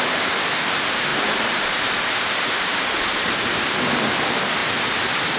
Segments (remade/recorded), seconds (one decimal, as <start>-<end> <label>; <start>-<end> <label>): 0.0-1.1 recorded; 1.1-2.9 remade; 2.9-4.6 recorded; 4.6-5.4 remade